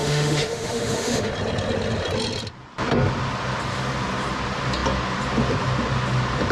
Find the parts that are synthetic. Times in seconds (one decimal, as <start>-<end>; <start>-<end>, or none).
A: 0.0-1.3

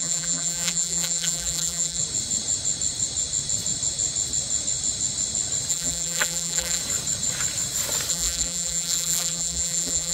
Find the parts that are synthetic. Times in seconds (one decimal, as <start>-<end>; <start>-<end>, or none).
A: 0.0-2.0; 5.7-6.8; 8.1-10.1

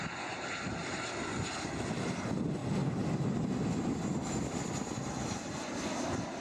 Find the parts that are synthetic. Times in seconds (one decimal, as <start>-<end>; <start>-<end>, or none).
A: 0.8-1.4

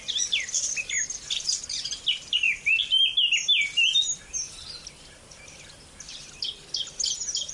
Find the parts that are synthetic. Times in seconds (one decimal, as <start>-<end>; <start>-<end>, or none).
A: none

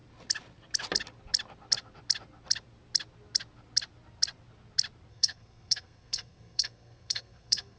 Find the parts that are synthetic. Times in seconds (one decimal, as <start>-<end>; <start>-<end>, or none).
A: 5.1-7.8

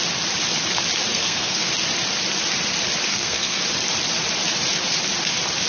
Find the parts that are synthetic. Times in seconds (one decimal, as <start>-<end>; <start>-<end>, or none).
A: 1.1-1.7; 3.1-3.6

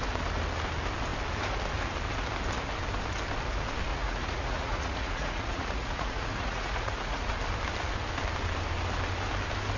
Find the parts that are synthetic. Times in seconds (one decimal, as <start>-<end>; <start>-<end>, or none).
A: 3.9-7.3